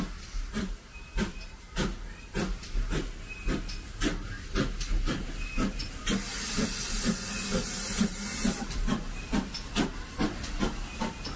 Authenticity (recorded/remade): recorded